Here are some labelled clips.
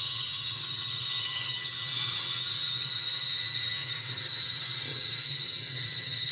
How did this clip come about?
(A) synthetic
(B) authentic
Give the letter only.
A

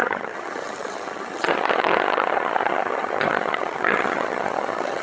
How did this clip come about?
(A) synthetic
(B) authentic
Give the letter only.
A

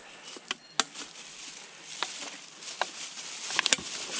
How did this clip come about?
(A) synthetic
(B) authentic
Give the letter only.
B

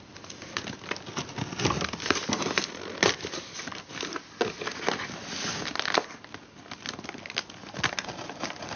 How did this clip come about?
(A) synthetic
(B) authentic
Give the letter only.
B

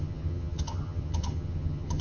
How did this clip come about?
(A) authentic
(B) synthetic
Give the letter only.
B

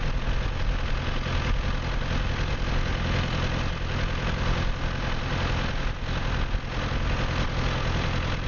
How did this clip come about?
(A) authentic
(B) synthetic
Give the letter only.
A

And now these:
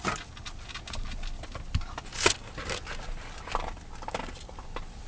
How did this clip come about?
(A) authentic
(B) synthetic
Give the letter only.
A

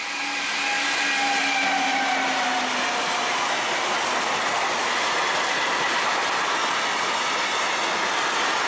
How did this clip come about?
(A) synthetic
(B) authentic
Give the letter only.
B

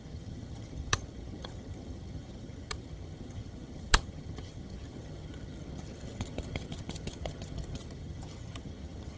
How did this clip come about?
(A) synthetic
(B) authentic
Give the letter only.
A